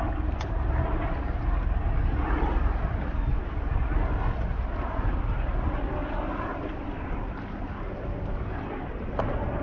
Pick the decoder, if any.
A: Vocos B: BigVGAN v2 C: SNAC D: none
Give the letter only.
D